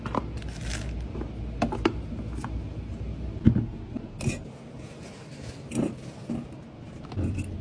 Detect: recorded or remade recorded